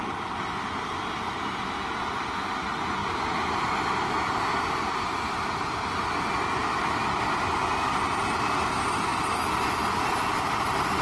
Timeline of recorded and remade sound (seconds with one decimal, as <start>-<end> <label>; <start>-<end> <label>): 0.0-11.0 recorded